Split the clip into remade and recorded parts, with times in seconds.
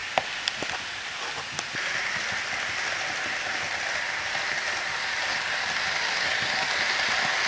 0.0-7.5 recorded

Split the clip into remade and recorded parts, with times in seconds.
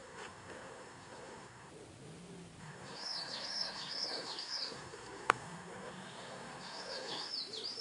0.0-1.7 remade; 1.7-2.6 recorded; 2.6-7.3 remade; 7.3-7.8 recorded